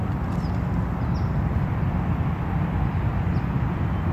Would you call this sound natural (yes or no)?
yes